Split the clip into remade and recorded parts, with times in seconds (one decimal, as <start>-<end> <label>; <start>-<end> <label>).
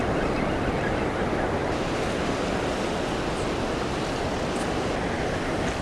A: 0.0-5.8 recorded